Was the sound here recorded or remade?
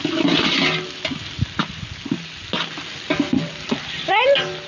recorded